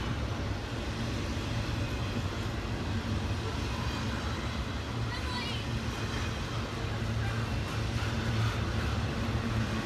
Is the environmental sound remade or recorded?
recorded